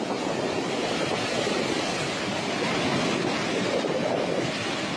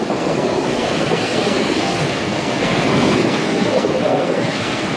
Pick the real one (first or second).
first